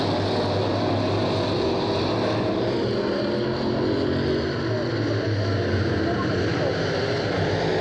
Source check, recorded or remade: recorded